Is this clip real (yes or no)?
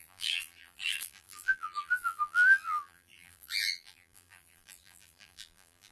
no